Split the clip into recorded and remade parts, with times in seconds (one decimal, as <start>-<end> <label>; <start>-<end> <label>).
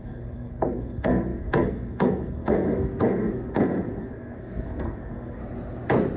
0.0-5.4 remade; 5.4-6.2 recorded